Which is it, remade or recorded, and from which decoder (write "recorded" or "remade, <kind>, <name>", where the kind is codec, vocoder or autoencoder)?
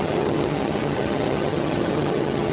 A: remade, vocoder, HiFi-GAN